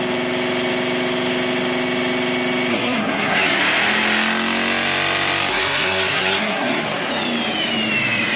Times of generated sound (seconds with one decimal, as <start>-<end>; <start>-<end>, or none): 2.7-3.6; 5.5-7.1